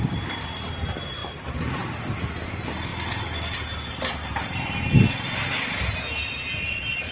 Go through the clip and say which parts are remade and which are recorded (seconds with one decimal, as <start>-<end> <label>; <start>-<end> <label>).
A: 0.0-7.1 recorded